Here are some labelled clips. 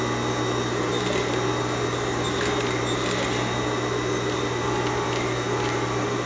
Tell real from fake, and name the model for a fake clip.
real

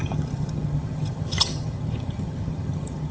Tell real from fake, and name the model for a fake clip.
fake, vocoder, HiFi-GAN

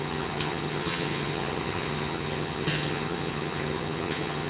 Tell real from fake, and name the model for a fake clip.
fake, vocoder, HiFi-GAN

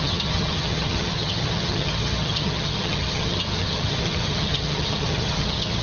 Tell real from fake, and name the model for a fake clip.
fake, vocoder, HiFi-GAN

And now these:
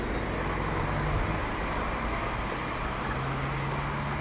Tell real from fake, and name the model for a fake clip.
real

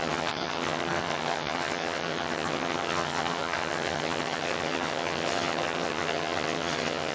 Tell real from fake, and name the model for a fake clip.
fake, vocoder, HiFi-GAN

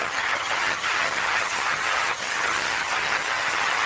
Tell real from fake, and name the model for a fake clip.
fake, vocoder, HiFi-GAN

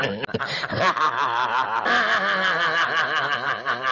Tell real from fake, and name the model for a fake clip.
real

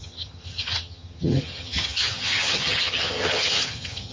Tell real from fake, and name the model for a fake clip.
fake, vocoder, HiFi-GAN